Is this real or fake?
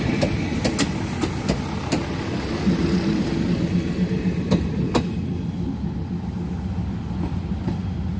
real